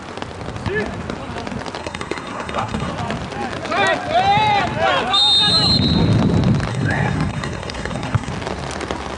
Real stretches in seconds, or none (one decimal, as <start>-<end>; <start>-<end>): 0.0-1.8; 2.9-6.7; 8.3-9.2